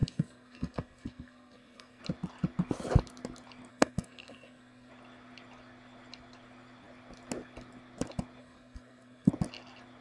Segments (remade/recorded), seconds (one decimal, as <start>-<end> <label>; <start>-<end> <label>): 0.0-2.0 remade; 2.0-3.7 recorded; 3.7-4.9 remade; 4.9-8.4 recorded; 8.4-9.3 remade; 9.3-10.0 recorded